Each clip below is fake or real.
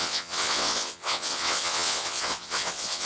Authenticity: fake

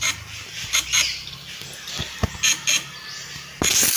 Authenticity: real